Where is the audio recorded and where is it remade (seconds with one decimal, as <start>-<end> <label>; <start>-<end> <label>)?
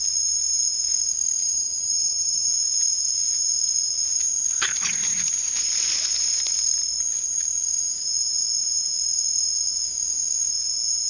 0.0-1.4 recorded; 1.4-2.5 remade; 2.5-11.1 recorded